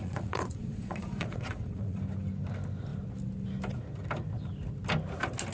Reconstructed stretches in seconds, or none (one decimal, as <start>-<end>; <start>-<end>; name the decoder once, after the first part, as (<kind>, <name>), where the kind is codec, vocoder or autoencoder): 0.0-2.0 (vocoder, Vocos)

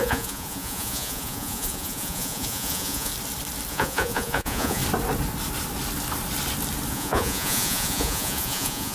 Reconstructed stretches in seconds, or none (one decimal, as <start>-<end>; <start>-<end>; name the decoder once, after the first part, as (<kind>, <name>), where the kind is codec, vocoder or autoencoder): 0.0-3.1 (vocoder, Vocos); 3.7-4.8; 6.9-8.9

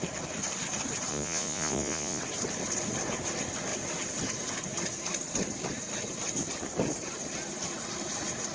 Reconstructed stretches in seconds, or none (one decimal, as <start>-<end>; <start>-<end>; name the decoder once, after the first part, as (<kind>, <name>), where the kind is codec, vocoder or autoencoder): 1.1-2.2 (vocoder, Vocos)

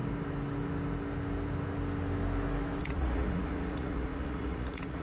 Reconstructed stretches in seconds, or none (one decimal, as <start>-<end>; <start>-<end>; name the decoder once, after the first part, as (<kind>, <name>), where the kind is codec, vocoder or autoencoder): 2.8-5.0 (vocoder, Vocos)

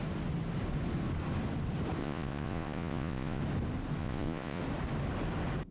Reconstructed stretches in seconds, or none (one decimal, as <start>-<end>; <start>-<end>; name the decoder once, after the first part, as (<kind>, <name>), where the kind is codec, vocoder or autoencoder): 2.0-3.4 (vocoder, Vocos); 4.0-4.6

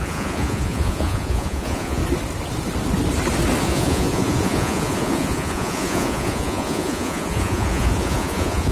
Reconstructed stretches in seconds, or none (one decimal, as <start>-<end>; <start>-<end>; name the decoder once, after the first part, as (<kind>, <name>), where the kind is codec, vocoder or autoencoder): 0.0-2.0 (vocoder, Vocos); 3.6-8.7